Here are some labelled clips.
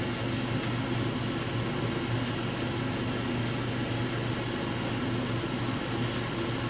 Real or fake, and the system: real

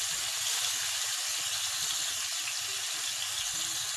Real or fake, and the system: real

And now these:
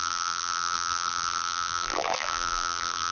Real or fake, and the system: fake, vocoder, BigVGAN v2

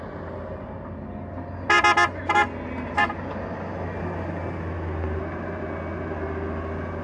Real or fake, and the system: real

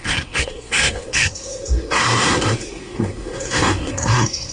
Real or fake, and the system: fake, codec, SNAC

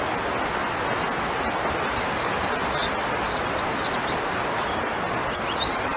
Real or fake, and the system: real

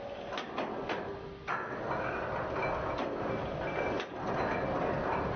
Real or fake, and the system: real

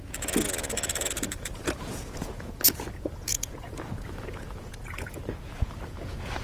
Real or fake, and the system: fake, vocoder, Vocos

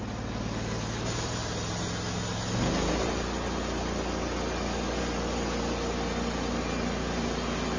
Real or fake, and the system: real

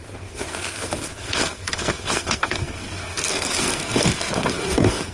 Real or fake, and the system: fake, codec, SNAC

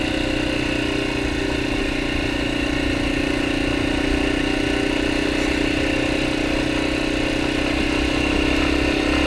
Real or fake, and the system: real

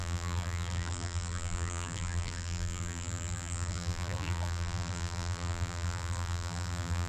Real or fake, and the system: fake, vocoder, BigVGAN v2